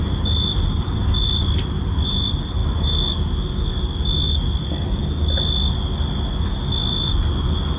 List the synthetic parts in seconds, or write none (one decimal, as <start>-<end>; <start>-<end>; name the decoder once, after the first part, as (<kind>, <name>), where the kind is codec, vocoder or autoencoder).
none